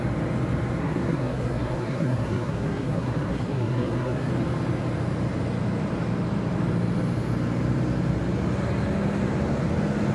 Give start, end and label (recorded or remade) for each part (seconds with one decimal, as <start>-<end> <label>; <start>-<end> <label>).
0.0-0.8 recorded; 0.8-4.3 remade; 4.3-10.1 recorded